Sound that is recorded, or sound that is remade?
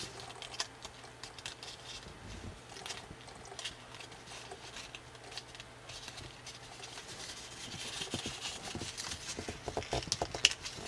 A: recorded